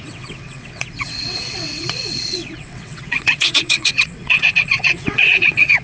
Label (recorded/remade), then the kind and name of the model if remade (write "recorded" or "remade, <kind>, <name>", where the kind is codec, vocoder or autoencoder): remade, vocoder, WaveNeXt